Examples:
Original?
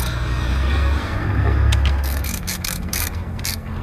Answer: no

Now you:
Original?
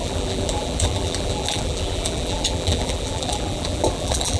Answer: no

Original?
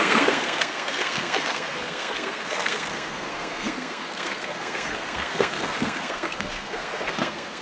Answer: no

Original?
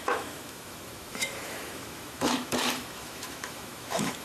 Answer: no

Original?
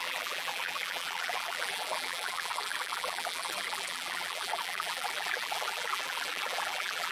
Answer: no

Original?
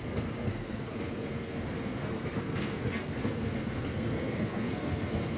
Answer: no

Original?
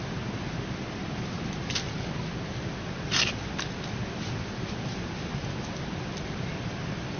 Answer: yes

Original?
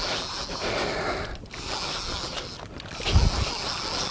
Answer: yes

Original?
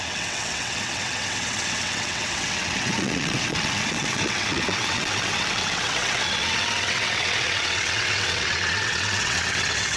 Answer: no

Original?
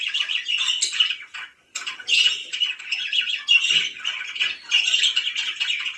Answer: yes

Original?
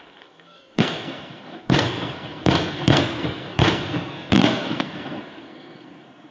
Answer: no